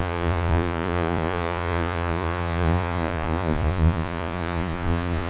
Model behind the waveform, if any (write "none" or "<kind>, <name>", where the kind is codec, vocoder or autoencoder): vocoder, Vocos